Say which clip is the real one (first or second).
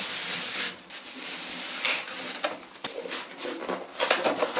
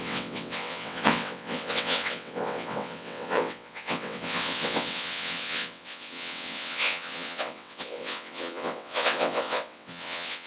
first